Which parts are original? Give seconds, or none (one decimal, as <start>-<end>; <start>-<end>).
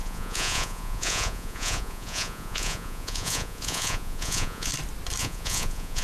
4.7-5.2